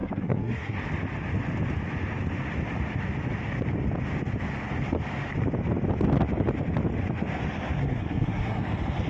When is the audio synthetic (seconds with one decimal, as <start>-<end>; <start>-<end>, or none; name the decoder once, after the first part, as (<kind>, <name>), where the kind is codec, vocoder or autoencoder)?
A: 0.0-0.8 (codec, SNAC); 7.8-8.6